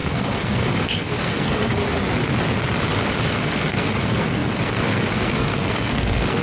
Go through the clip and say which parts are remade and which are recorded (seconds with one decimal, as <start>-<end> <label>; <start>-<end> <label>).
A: 0.0-1.8 remade; 1.8-3.2 recorded; 3.2-6.4 remade